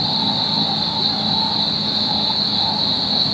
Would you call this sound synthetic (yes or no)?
no